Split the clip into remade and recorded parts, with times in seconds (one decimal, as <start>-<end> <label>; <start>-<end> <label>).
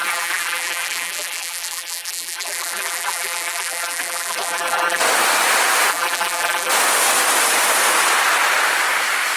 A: 0.0-5.0 remade; 5.0-5.9 recorded; 5.9-6.7 remade; 6.7-9.4 recorded